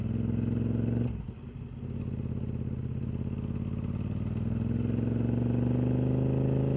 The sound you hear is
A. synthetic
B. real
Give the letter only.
B